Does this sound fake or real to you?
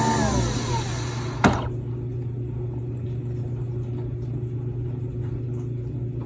real